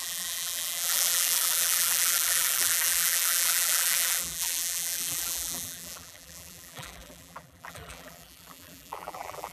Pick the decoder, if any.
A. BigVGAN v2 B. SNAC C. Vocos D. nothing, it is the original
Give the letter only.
A